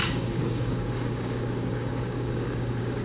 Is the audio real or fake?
fake